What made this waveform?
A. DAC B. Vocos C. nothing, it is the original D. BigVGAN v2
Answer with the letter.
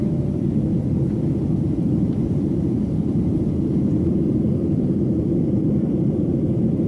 D